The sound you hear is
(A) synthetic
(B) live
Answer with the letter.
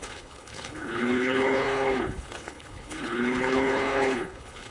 A